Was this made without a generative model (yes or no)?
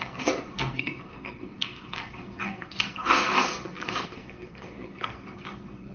no